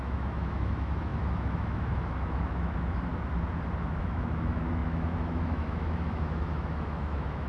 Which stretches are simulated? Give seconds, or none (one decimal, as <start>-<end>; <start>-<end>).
0.0-3.1; 3.8-7.5